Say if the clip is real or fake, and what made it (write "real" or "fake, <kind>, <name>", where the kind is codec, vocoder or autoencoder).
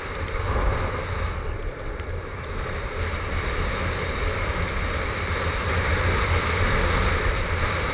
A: real